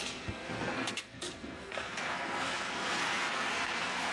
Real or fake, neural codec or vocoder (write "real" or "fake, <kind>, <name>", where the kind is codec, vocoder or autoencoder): fake, codec, SNAC